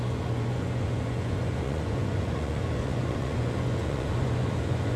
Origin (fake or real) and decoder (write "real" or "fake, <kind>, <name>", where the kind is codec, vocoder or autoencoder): fake, vocoder, Vocos